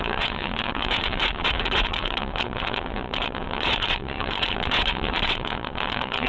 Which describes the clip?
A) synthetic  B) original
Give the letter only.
A